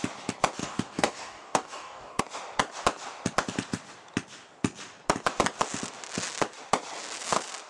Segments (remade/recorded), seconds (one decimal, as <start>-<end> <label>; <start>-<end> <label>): 0.0-0.6 recorded; 0.6-2.2 remade; 2.2-7.7 recorded